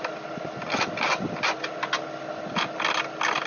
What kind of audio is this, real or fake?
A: real